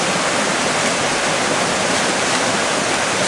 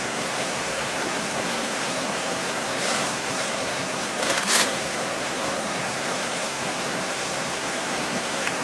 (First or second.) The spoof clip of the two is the second